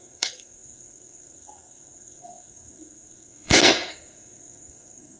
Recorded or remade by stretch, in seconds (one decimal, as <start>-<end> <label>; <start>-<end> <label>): 0.0-5.2 remade